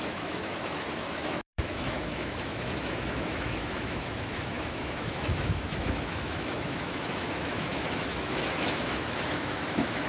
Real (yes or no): no